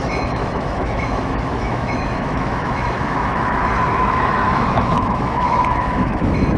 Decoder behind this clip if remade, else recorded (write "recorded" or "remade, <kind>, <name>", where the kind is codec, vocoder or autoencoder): remade, autoencoder, DAC-VAE